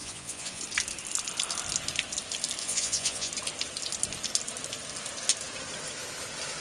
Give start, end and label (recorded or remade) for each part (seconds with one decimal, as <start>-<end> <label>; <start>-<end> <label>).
0.0-0.6 remade; 0.6-2.6 recorded; 2.6-3.3 remade; 3.3-6.6 recorded